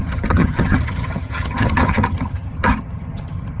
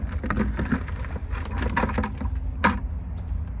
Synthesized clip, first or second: first